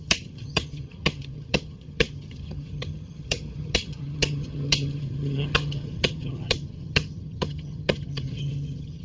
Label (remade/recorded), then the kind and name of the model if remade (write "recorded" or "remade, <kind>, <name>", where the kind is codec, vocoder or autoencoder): remade, vocoder, HiFi-GAN